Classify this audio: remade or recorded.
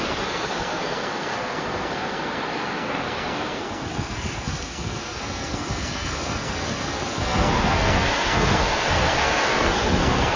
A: remade